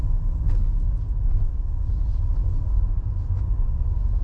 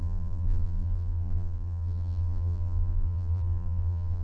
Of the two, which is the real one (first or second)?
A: first